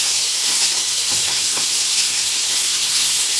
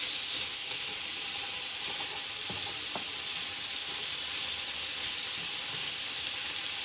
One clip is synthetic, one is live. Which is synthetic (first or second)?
first